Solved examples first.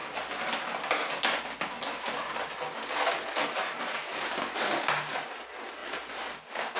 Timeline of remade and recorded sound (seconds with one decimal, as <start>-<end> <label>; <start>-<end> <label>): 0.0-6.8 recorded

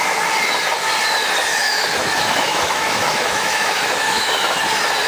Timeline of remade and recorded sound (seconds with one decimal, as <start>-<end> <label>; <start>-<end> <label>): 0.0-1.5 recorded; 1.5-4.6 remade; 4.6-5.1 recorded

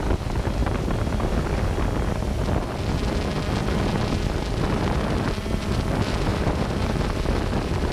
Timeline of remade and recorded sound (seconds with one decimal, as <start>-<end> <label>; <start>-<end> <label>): 0.0-0.6 recorded; 0.6-1.8 remade; 1.8-6.3 recorded; 6.3-7.0 remade; 7.0-7.9 recorded

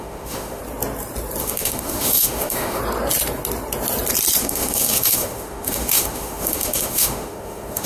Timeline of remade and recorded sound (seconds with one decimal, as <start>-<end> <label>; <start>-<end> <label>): 0.0-0.6 remade; 0.6-1.4 recorded; 1.4-2.8 remade; 2.8-4.4 recorded; 4.4-7.9 remade